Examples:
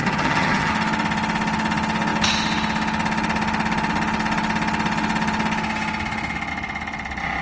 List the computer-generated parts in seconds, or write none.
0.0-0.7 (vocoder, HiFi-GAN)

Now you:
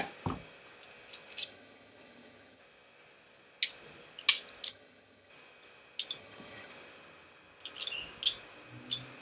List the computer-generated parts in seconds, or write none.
1.4-2.6 (vocoder, HiFi-GAN); 4.7-5.3; 6.2-6.7

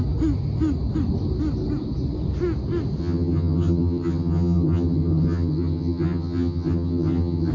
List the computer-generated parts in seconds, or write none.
3.0-7.5 (vocoder, HiFi-GAN)

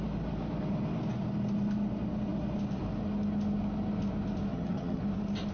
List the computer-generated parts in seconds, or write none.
4.5-5.0 (vocoder, HiFi-GAN)